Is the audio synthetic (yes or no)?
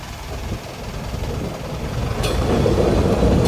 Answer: yes